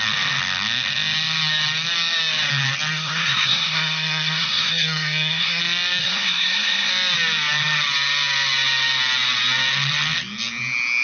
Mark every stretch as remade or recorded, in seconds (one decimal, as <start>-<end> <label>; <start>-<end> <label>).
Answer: 0.0-2.9 recorded; 2.9-5.6 remade; 5.6-6.0 recorded; 6.0-6.9 remade; 6.9-11.0 recorded